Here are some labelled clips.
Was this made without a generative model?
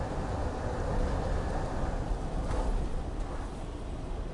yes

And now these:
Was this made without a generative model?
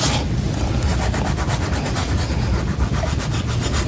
yes